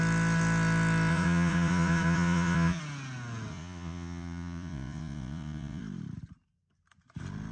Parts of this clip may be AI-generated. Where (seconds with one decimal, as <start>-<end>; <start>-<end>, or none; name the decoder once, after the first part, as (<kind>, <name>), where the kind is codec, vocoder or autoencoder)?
1.1-2.8 (vocoder, Vocos); 3.5-5.8

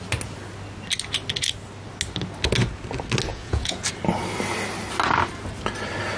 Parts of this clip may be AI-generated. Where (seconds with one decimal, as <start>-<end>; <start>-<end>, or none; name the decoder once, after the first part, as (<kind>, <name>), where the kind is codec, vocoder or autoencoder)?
3.3-3.9 (vocoder, Vocos)

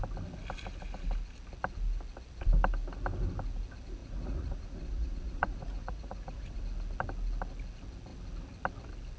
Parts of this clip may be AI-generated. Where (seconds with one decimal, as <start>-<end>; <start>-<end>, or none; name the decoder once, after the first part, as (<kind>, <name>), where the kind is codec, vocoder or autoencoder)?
4.0-6.6 (vocoder, Vocos)

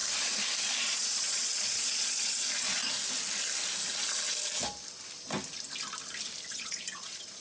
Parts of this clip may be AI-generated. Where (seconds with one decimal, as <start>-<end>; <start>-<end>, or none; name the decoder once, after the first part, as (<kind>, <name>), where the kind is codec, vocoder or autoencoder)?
0.6-2.8 (vocoder, Vocos); 6.5-7.4